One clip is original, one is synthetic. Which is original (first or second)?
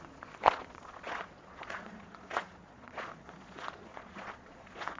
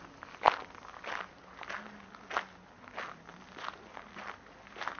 second